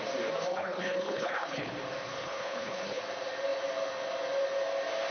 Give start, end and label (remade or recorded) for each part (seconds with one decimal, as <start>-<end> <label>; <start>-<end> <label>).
0.0-0.5 recorded; 0.5-1.7 remade; 1.7-2.1 recorded; 2.1-3.0 remade; 3.0-5.1 recorded